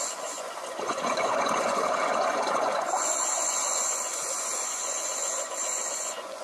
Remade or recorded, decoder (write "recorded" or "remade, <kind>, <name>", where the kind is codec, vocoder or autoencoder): remade, vocoder, Vocos